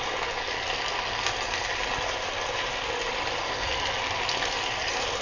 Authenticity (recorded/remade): recorded